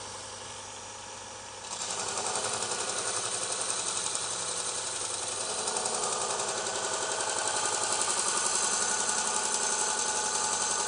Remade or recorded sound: recorded